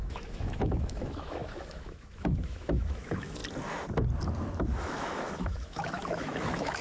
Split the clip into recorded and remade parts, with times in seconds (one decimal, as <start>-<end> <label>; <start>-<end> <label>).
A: 0.0-3.4 remade; 3.4-4.8 recorded; 4.8-6.8 remade